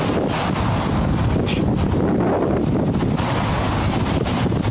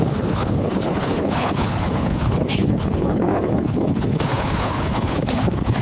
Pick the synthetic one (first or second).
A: second